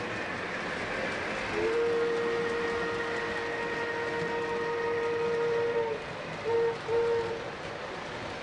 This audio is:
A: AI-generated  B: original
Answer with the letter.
B